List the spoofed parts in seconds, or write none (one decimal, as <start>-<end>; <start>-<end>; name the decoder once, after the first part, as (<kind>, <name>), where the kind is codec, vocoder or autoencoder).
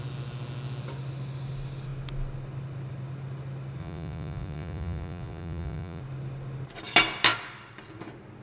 3.8-6.0 (vocoder, Vocos)